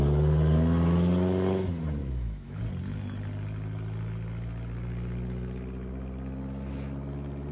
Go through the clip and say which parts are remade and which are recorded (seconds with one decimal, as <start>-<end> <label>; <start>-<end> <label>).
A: 0.0-2.0 recorded; 2.0-2.6 remade; 2.6-7.5 recorded